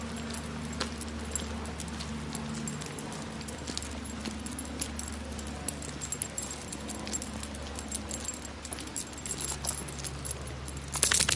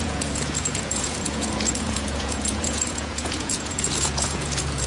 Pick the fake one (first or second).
second